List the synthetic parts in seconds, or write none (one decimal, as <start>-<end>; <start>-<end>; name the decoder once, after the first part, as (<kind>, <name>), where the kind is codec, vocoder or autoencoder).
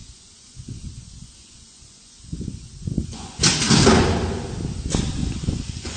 0.0-3.6 (vocoder, Vocos); 5.2-6.0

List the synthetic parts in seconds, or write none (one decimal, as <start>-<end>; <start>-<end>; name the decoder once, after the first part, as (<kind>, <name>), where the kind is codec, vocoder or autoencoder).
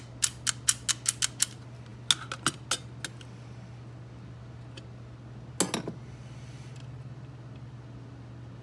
none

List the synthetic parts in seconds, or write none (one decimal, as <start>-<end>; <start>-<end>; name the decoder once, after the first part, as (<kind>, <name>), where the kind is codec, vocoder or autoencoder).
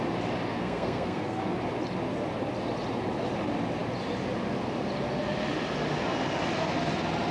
0.5-1.4 (codec, SNAC)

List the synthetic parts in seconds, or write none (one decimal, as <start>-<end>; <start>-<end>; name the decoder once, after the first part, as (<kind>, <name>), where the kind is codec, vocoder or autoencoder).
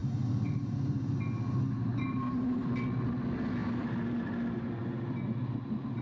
0.0-1.1 (vocoder, BigVGAN v2); 1.9-2.6; 3.6-4.6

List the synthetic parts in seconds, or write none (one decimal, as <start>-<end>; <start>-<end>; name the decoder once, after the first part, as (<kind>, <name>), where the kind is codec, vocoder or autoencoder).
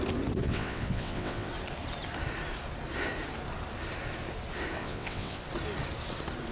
0.4-1.5 (vocoder, WaveNeXt); 4.8-5.4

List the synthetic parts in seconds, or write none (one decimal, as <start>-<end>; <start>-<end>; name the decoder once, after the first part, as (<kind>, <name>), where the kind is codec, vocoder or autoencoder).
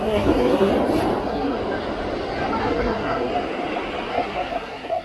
0.0-0.7 (codec, SNAC); 1.2-1.6; 2.6-3.3; 4.1-5.0